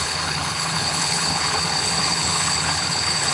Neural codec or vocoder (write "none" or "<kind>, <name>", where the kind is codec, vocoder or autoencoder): codec, HILCodec